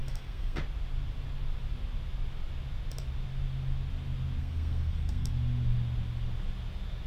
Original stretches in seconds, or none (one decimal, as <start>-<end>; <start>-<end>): 0.6-4.4; 5.3-7.1